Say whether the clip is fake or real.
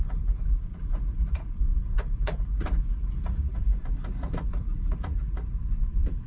fake